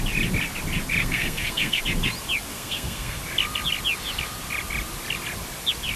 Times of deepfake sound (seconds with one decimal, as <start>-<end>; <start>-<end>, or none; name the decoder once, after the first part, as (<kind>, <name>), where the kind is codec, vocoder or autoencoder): 1.0-1.8 (codec, SNAC); 2.5-3.2

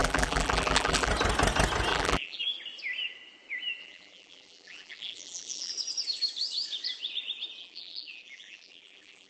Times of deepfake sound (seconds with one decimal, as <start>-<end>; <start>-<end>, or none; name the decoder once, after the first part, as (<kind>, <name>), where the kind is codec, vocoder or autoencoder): 0.0-1.1 (vocoder, BigVGAN v2); 1.9-2.4; 3.8-5.7; 7.6-9.3

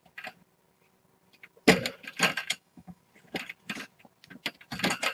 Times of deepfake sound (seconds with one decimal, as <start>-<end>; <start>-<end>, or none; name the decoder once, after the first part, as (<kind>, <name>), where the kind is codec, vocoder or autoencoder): 2.4-3.0 (autoencoder, DAC-VAE)

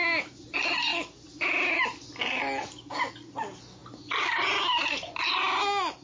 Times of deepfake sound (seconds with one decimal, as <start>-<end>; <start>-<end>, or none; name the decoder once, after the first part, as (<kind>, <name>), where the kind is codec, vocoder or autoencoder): none

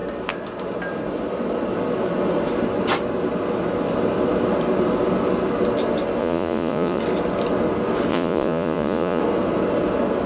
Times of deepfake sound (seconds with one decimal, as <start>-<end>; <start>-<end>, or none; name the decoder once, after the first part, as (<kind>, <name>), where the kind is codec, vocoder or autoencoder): 6.2-7.0 (vocoder, Vocos); 8.1-9.2